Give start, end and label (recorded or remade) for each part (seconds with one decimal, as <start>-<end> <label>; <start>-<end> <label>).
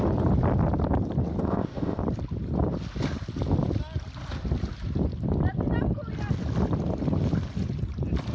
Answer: 0.0-1.4 recorded; 1.4-2.0 remade; 2.0-8.3 recorded